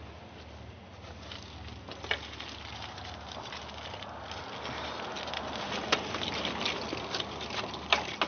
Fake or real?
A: real